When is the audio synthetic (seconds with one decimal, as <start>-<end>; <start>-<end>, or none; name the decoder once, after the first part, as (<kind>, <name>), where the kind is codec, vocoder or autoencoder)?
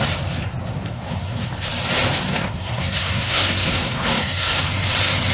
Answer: 0.7-1.5 (codec, SNAC); 2.3-4.6